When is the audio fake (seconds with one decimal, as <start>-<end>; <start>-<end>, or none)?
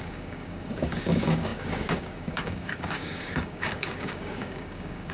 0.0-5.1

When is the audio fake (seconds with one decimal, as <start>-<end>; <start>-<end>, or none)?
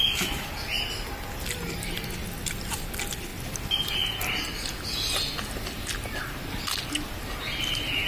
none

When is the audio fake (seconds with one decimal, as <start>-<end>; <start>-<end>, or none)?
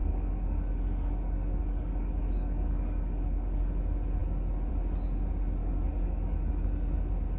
0.0-3.7; 5.6-6.5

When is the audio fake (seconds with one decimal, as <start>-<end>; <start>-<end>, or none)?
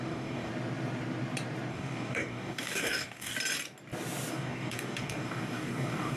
0.0-0.5; 1.7-3.3; 4.3-6.2